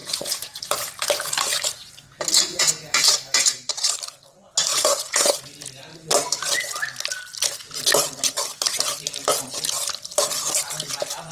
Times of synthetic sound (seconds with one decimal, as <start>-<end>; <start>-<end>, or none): 0.0-0.6; 2.5-3.7; 4.7-5.3